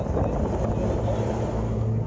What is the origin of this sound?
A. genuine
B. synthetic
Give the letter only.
A